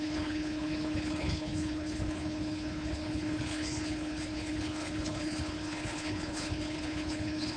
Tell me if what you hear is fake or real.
fake